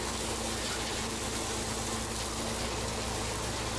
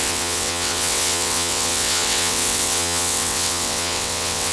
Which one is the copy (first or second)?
second